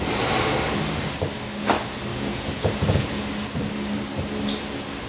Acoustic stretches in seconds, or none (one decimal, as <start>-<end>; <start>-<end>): 0.0-2.1; 3.2-5.1